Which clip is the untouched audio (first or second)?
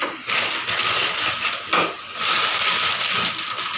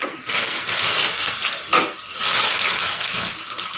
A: first